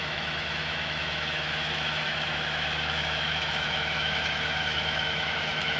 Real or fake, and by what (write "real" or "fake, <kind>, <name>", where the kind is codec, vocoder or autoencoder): fake, autoencoder, DAC-VAE